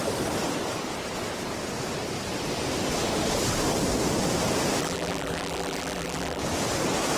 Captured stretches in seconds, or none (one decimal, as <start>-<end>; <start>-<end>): 0.0-4.8; 6.4-7.2